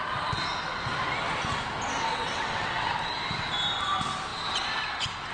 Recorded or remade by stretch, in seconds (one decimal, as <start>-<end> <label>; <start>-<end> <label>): 0.0-2.1 recorded; 2.1-2.9 remade; 2.9-5.3 recorded